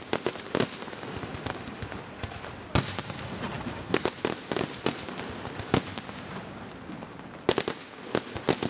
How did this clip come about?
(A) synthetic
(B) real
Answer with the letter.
B